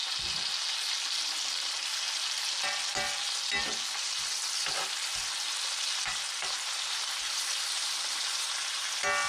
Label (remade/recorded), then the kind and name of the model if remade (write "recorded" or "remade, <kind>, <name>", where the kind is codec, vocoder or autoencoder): recorded